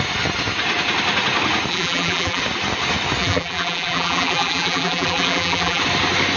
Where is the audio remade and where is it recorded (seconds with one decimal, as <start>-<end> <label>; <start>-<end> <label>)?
0.0-1.7 recorded; 1.7-2.4 remade; 2.4-3.2 recorded; 3.2-5.8 remade; 5.8-6.4 recorded